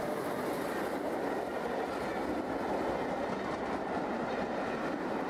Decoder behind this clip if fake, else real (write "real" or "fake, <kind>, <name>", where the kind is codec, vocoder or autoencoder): real